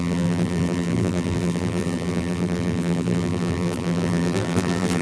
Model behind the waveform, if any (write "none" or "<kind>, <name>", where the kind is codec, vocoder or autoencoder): vocoder, BigVGAN v2